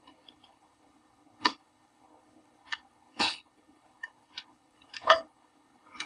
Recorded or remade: remade